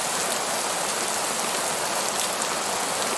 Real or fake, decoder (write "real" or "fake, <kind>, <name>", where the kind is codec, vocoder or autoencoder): real